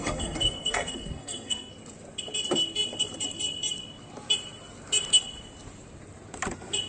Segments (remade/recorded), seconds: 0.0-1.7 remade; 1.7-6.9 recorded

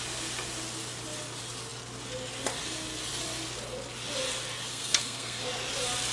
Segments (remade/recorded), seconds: 0.0-4.7 recorded; 4.7-5.4 remade; 5.4-6.1 recorded

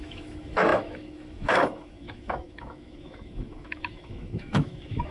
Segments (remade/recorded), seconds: 0.0-5.1 remade

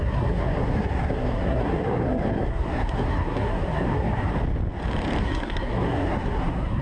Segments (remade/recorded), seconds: 0.0-4.3 remade; 4.3-5.2 recorded; 5.2-6.8 remade

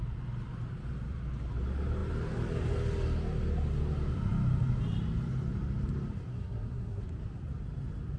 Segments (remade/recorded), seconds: 0.0-6.3 recorded; 6.3-7.0 remade; 7.0-8.2 recorded

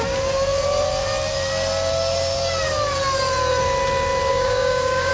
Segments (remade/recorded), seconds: 0.0-4.3 recorded; 4.3-5.1 remade

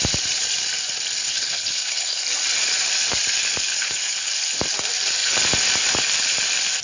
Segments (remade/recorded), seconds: 0.0-1.2 recorded; 1.2-2.2 remade; 2.2-3.7 recorded; 3.7-4.3 remade; 4.3-6.8 recorded